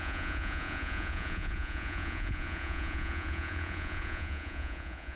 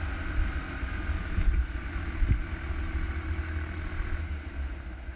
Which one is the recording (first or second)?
second